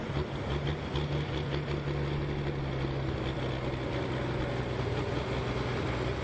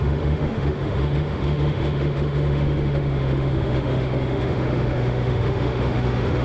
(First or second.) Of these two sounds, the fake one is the second